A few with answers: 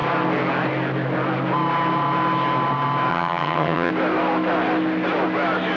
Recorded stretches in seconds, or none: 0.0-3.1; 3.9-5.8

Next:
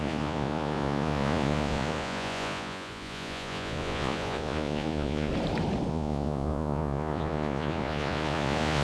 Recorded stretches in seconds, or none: 5.3-5.9

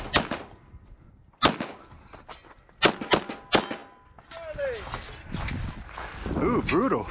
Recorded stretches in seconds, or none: 0.0-7.1

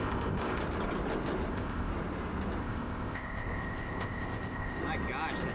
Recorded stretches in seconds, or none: 0.6-1.5; 1.9-2.6; 4.8-5.5

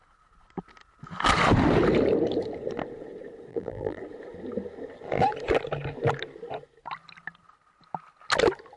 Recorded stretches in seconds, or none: 0.0-3.5; 4.0-8.8

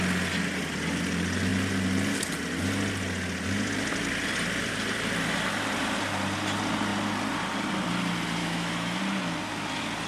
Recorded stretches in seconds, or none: 0.0-8.4; 9.0-10.1